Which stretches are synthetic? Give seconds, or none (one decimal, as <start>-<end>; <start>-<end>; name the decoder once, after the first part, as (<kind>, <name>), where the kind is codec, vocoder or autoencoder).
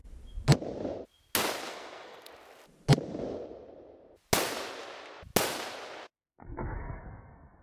1.7-2.3 (codec, SNAC); 6.3-7.6